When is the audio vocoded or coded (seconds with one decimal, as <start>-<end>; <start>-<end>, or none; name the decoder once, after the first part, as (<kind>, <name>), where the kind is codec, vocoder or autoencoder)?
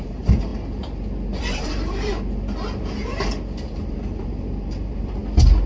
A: 0.0-0.5 (vocoder, BigVGAN v2); 1.4-2.1; 3.7-5.2